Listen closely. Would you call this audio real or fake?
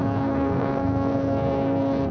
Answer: fake